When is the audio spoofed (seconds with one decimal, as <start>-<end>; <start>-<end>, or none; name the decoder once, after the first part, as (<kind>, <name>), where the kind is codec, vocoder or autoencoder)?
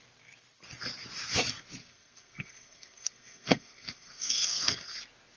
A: 1.8-5.0 (codec, SNAC)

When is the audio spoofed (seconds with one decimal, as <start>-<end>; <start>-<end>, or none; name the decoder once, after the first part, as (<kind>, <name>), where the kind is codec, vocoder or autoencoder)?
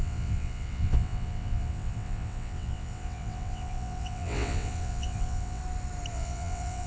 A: 0.0-5.6 (vocoder, WaveNeXt); 6.1-6.9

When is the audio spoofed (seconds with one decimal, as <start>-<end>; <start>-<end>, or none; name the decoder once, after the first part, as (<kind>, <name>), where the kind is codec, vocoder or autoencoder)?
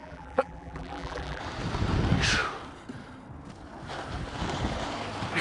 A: 0.0-1.4 (vocoder, BigVGAN v2)